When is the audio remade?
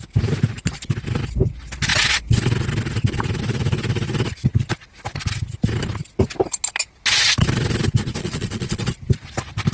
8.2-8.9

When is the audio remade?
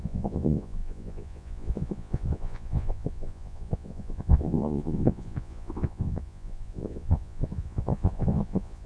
0.0-8.9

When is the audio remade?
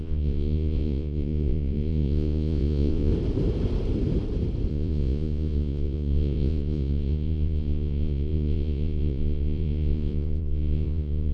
0.0-3.1; 4.7-11.3